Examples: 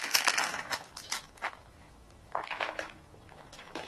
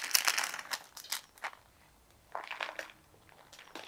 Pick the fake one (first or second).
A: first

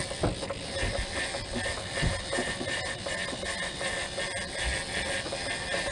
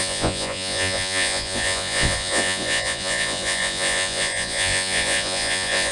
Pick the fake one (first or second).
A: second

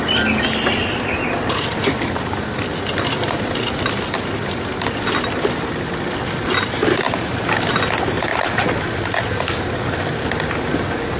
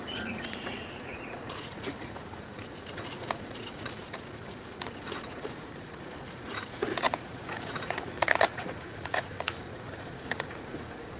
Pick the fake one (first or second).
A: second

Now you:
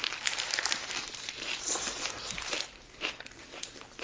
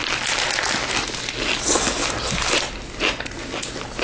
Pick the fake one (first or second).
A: first